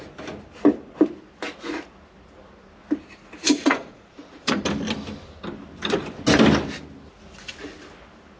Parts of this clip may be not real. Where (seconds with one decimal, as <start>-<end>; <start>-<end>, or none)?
3.2-4.6